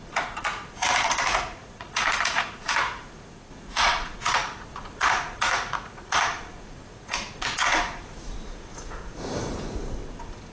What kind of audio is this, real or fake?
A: fake